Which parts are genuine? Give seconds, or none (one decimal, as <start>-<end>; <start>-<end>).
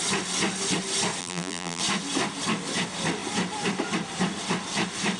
0.0-1.2; 1.8-5.2